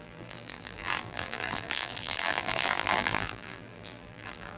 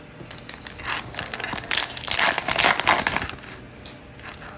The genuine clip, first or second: second